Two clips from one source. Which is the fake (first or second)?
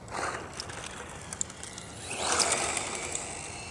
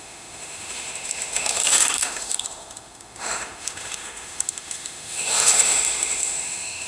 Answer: second